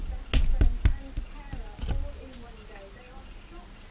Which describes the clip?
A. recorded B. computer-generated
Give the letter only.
A